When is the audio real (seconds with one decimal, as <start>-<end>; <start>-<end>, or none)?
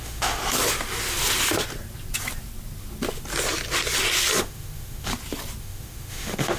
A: 0.4-4.4; 5.1-5.6